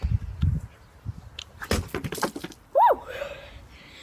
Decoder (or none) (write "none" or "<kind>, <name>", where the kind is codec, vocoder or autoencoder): none